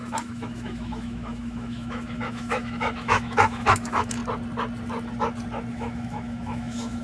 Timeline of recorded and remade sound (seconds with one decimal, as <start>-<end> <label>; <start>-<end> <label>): 0.0-4.2 remade; 4.2-5.7 recorded; 5.7-7.0 remade